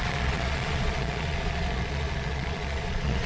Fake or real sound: fake